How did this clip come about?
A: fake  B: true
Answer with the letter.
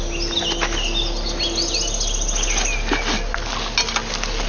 B